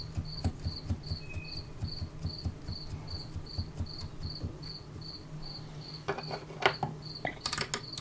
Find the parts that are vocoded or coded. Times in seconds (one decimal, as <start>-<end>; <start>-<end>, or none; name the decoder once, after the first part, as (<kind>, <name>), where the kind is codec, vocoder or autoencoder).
none